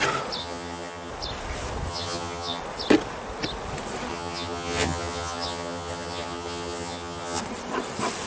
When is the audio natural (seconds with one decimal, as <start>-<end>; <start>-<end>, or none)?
0.0-0.4; 1.1-1.9; 2.6-4.1; 7.4-8.3